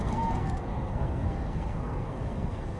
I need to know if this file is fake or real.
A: fake